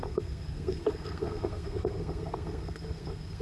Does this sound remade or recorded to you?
remade